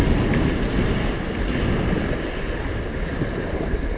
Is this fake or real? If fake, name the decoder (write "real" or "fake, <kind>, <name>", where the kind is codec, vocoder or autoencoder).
real